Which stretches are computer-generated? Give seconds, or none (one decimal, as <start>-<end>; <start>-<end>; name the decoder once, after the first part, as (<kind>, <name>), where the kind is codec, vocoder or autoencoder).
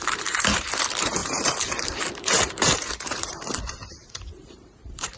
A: 0.0-5.2 (vocoder, BigVGAN v2)